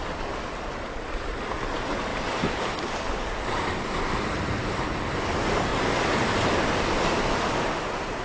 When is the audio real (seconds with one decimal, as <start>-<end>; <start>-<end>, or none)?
0.0-2.1; 4.8-5.7; 7.1-8.2

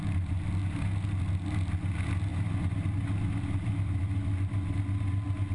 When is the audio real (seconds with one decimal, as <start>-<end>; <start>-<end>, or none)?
0.0-5.5

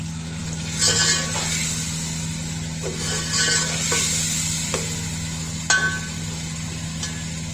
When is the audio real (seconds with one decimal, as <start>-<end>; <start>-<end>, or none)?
0.0-7.5

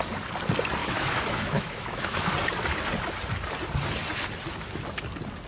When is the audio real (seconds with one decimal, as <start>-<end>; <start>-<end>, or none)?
0.0-0.8; 2.3-5.5

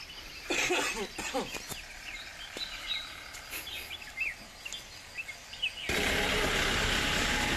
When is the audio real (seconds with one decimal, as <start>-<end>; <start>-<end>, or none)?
0.0-7.6

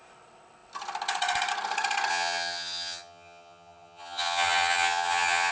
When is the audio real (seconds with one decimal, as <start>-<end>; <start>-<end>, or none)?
0.0-2.1

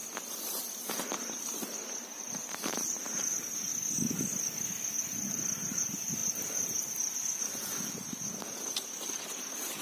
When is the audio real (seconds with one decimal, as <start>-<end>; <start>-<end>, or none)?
0.0-0.6; 3.7-5.0

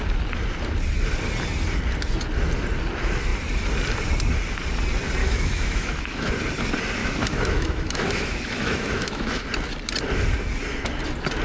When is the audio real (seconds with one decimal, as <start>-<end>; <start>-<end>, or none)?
0.0-5.2; 6.3-7.0; 9.4-11.4